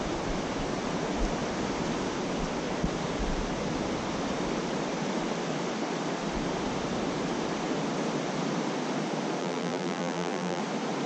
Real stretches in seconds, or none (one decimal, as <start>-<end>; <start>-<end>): 0.0-9.4; 10.6-11.1